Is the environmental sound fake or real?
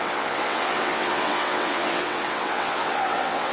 fake